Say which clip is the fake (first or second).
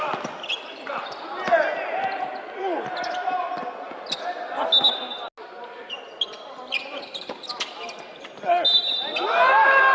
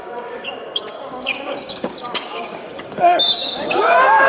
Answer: second